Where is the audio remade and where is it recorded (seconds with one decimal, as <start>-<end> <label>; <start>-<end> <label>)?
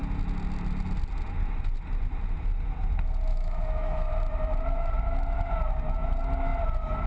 0.0-3.3 recorded; 3.3-4.1 remade; 4.1-7.1 recorded